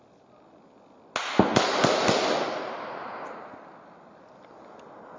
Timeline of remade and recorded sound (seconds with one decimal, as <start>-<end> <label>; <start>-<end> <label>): 0.0-5.2 recorded